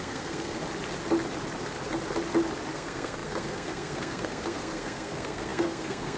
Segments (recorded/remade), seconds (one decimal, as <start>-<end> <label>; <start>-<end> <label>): 0.0-0.6 remade; 0.6-2.7 recorded; 2.7-6.2 remade